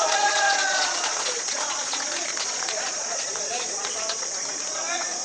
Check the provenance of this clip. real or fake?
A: fake